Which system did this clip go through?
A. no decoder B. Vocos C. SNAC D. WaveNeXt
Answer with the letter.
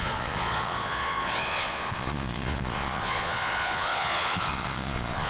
B